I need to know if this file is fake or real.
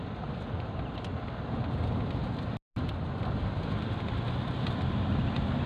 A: real